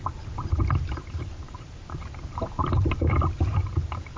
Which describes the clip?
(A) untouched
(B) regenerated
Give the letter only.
B